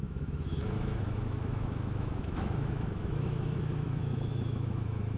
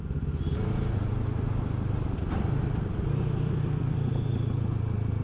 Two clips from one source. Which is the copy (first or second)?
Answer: first